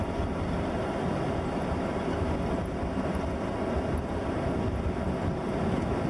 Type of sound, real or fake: real